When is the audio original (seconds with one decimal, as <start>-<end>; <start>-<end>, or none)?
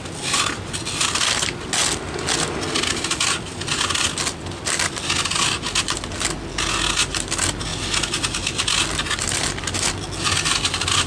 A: 0.0-11.1